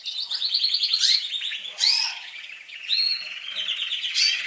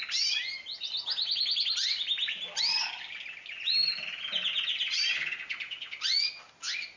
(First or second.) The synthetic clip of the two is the first